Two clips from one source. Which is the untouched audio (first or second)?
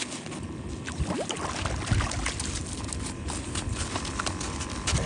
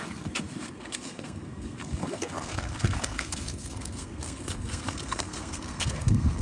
first